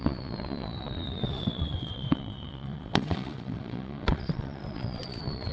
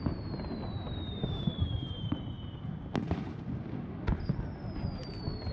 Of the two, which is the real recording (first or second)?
second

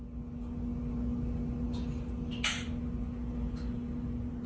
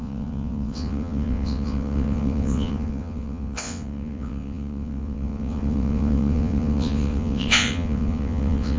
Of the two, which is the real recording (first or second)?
first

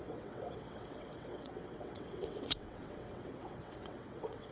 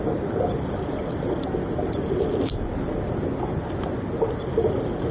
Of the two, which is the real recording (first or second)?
second